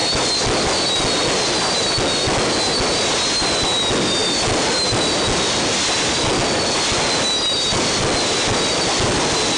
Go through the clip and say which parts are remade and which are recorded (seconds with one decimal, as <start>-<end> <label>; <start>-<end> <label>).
0.0-9.6 recorded